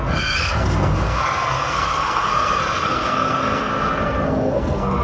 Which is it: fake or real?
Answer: fake